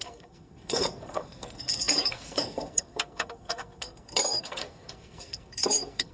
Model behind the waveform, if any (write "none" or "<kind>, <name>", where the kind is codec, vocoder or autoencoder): codec, SNAC